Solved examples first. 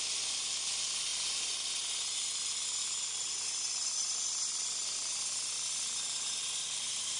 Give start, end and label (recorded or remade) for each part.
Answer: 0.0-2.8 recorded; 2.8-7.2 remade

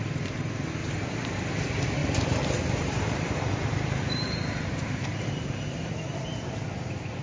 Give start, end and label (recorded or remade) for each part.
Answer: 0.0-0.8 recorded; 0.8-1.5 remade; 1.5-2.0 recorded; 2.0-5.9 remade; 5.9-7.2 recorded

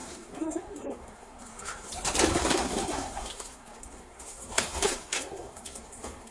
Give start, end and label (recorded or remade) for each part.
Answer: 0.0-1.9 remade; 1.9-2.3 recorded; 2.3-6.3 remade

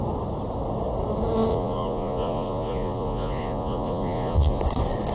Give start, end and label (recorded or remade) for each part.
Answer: 0.0-1.5 recorded; 1.5-4.6 remade; 4.6-5.1 recorded